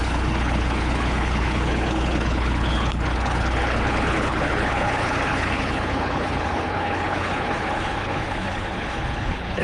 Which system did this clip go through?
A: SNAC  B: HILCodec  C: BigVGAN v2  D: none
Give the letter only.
B